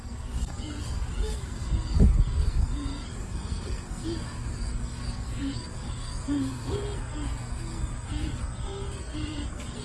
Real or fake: fake